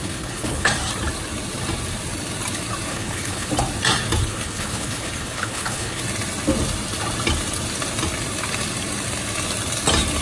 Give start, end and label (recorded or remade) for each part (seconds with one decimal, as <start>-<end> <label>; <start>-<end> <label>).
0.0-0.7 remade; 0.7-2.9 recorded; 2.9-3.5 remade; 3.5-4.2 recorded; 4.2-6.0 remade; 6.0-10.2 recorded